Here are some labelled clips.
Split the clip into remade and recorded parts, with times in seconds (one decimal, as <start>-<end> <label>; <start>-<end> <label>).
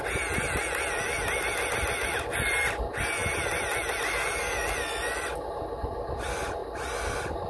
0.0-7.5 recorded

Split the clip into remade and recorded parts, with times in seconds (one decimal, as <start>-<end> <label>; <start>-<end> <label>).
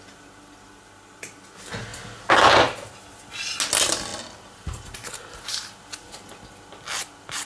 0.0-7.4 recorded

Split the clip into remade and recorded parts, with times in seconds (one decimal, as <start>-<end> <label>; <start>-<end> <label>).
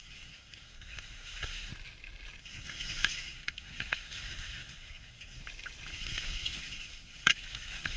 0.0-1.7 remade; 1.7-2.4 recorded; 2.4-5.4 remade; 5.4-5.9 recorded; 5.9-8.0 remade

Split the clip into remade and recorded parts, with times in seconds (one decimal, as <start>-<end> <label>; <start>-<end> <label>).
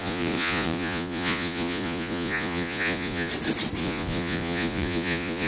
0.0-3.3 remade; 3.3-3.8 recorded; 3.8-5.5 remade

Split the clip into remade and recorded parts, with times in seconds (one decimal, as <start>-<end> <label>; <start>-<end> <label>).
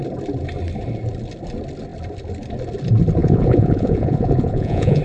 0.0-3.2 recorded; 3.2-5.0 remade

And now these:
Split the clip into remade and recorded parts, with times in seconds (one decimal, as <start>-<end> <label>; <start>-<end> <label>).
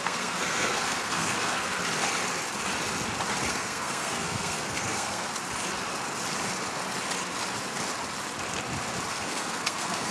0.0-1.8 remade; 1.8-3.5 recorded; 3.5-5.3 remade; 5.3-9.1 recorded; 9.1-10.1 remade